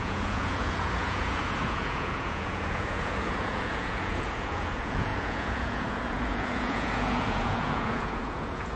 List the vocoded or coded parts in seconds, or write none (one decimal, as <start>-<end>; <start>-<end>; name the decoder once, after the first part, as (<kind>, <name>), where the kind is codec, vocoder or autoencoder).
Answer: 0.0-8.8 (vocoder, Vocos)